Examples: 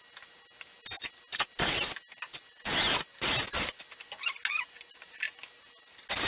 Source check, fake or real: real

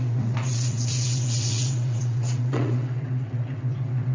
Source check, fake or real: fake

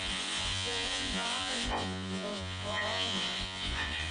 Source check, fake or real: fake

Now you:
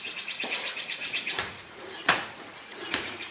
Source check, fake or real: fake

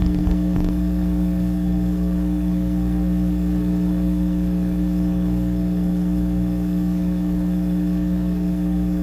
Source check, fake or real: fake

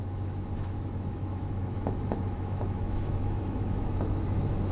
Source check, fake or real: fake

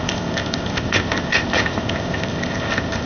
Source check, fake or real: fake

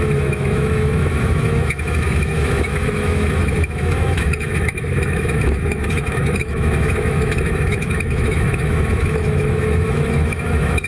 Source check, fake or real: fake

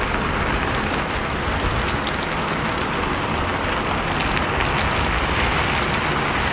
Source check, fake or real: real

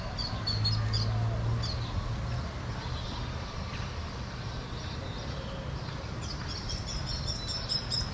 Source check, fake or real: real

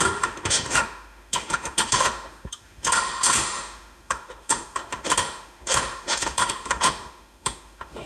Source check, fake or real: fake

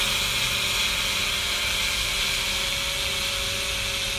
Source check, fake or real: real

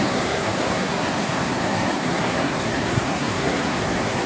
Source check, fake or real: fake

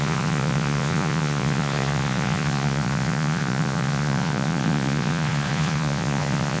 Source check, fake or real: fake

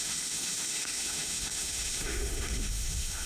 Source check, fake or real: fake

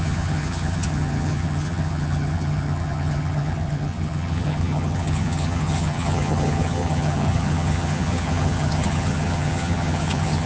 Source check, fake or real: fake